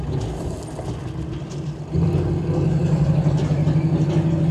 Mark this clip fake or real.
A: real